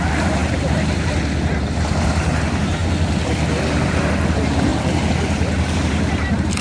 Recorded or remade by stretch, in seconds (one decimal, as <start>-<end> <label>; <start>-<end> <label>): 0.0-2.8 remade; 2.8-4.3 recorded; 4.3-6.6 remade